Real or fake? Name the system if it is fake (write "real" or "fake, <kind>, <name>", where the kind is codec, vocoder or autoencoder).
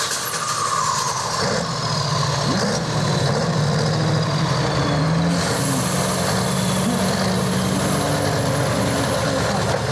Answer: real